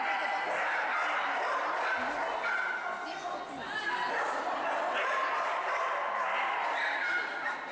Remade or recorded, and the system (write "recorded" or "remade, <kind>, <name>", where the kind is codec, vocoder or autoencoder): recorded